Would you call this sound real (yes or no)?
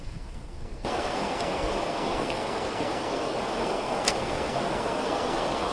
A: no